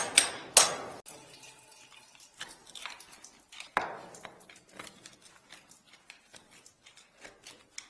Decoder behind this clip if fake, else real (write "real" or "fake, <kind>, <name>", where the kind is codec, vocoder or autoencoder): real